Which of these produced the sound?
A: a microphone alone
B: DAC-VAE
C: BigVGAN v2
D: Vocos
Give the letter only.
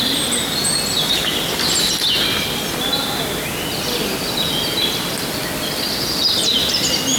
A